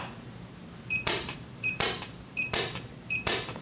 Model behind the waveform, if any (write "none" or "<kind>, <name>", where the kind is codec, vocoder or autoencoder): vocoder, BigVGAN v2